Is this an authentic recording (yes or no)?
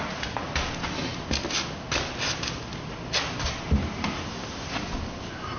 yes